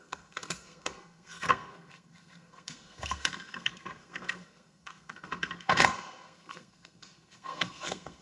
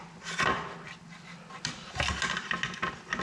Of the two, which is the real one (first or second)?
second